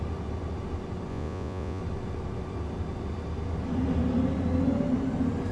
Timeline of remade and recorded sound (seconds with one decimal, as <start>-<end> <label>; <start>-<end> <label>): 0.0-1.1 recorded; 1.1-1.8 remade; 1.8-5.5 recorded